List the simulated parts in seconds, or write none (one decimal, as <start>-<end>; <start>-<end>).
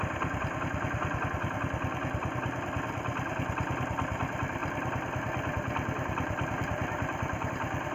none